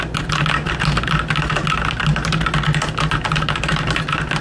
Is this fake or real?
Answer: real